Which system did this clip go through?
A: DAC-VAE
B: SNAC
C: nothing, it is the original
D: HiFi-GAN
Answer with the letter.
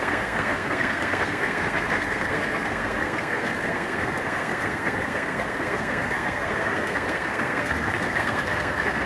B